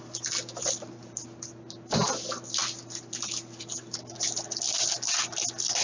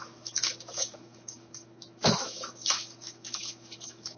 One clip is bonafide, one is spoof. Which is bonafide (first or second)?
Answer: first